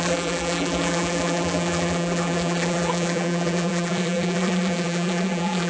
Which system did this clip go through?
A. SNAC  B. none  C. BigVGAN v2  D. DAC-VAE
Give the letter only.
C